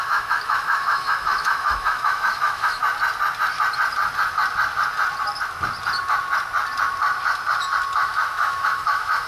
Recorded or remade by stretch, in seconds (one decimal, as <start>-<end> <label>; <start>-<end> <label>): 0.0-2.8 remade; 2.8-8.0 recorded; 8.0-9.3 remade